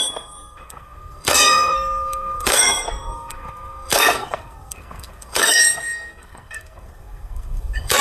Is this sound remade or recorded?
remade